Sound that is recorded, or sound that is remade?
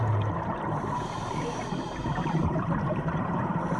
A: remade